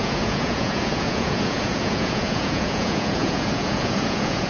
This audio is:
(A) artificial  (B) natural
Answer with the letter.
A